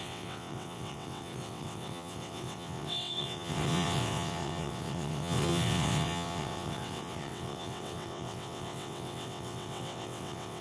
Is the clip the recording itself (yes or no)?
no